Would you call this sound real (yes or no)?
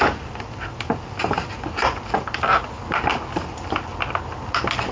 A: yes